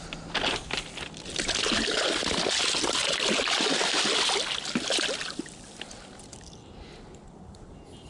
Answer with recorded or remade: recorded